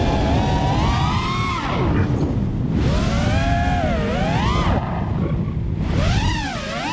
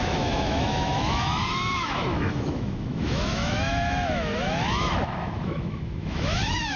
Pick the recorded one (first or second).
first